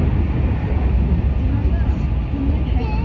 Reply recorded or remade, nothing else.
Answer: recorded